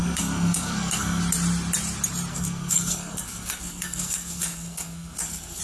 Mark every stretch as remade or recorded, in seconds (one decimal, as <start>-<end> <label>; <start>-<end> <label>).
0.0-1.2 remade; 1.2-2.3 recorded; 2.3-5.6 remade